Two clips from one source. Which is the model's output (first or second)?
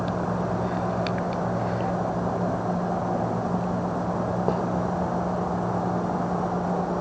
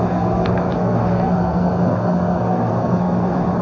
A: second